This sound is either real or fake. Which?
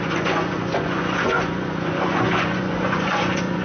fake